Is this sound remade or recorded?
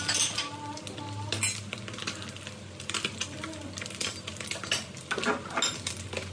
recorded